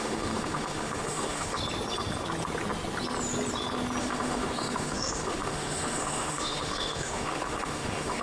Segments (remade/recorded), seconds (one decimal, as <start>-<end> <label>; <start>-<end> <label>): 0.0-1.6 remade; 1.6-4.0 recorded; 4.0-8.2 remade